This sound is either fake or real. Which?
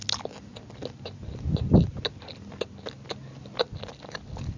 real